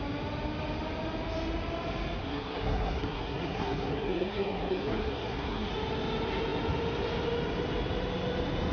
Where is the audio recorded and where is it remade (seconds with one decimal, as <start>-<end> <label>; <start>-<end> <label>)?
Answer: 0.0-2.2 recorded; 2.2-5.7 remade; 5.7-8.7 recorded

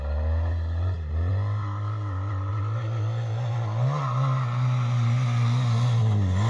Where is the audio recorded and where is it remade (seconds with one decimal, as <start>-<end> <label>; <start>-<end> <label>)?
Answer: 0.0-6.5 recorded

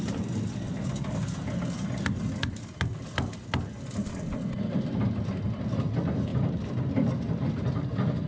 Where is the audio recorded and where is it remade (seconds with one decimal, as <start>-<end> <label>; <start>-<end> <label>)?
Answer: 0.0-8.3 recorded

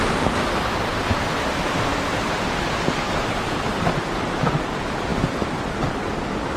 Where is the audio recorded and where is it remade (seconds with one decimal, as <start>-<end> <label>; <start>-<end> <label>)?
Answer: 0.0-6.6 recorded

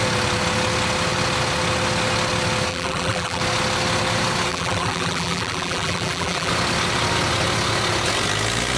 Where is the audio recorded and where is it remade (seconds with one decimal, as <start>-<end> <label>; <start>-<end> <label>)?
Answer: 0.0-2.7 recorded; 2.7-3.4 remade; 3.4-4.5 recorded; 4.5-6.5 remade; 6.5-8.8 recorded

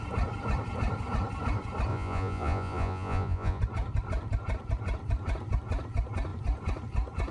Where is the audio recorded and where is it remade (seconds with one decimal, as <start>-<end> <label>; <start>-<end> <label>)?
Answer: 0.0-1.9 recorded; 1.9-3.6 remade; 3.6-7.3 recorded

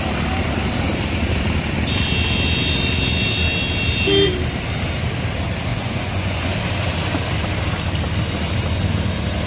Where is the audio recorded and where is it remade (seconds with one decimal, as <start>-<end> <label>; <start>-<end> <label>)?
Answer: 0.0-5.7 recorded; 5.7-6.5 remade; 6.5-9.5 recorded